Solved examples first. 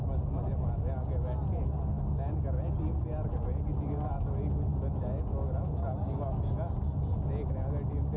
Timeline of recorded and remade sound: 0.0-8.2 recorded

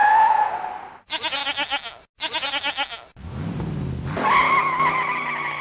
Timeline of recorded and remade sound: 0.0-0.5 remade; 0.5-5.6 recorded

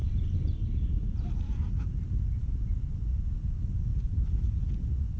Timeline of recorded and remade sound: 0.0-3.1 remade; 3.1-3.9 recorded; 3.9-4.7 remade; 4.7-5.2 recorded

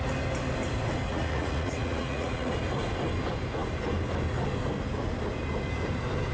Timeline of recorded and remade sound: 0.0-1.1 recorded; 1.1-2.5 remade; 2.5-6.3 recorded

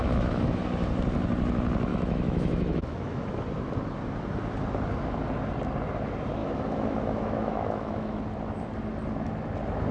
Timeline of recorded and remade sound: 0.0-0.6 remade; 0.6-1.9 recorded; 1.9-3.2 remade; 3.2-6.4 recorded; 6.4-8.2 remade; 8.2-9.9 recorded

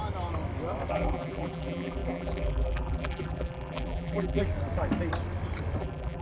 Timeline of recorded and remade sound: 0.0-0.9 recorded; 0.9-4.4 remade; 4.4-5.8 recorded; 5.8-6.2 remade

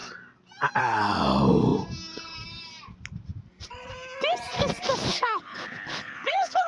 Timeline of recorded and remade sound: 0.0-5.1 recorded; 5.1-6.7 remade

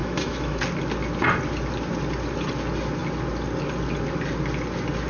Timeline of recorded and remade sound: 0.0-0.6 remade; 0.6-5.1 recorded